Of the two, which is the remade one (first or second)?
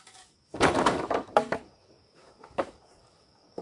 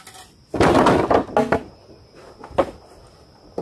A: first